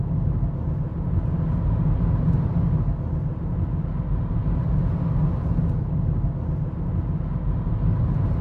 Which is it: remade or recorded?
recorded